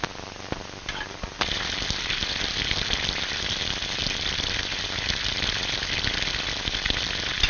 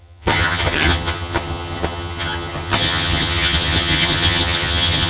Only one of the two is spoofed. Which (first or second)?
second